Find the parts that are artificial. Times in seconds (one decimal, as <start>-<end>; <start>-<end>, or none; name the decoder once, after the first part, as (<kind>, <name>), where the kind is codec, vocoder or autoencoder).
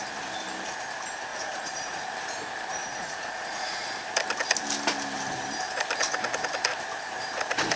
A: 1.3-2.0 (vocoder, Vocos); 2.8-3.9